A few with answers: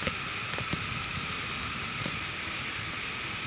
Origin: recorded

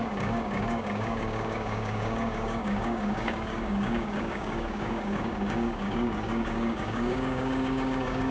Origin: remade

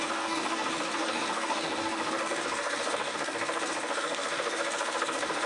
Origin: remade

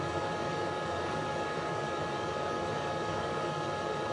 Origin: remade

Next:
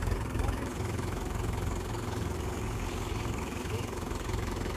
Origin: remade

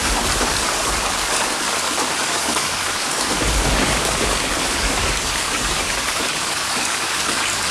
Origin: remade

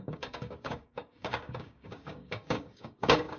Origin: remade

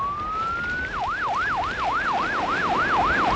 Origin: recorded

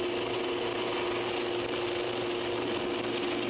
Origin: recorded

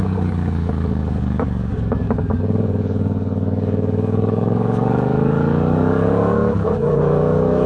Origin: remade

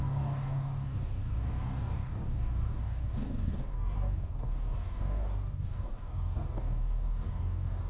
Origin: remade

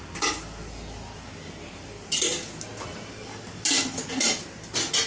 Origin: recorded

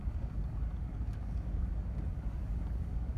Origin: remade